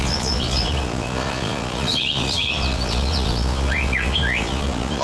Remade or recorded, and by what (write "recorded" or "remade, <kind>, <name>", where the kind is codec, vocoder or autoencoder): remade, vocoder, Vocos